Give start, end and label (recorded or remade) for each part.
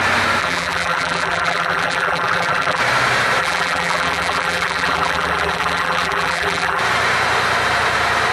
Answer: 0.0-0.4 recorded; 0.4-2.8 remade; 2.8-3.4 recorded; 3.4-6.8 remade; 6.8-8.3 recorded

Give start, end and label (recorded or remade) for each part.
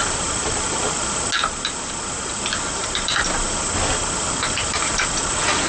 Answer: 0.0-0.7 remade; 0.7-2.8 recorded; 2.8-3.4 remade; 3.4-5.7 recorded